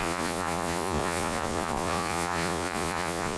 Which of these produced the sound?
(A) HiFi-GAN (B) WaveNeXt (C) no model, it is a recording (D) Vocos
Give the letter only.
D